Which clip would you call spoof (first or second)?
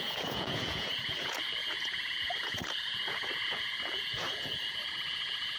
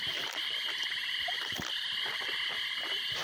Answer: first